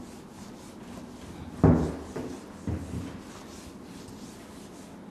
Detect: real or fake real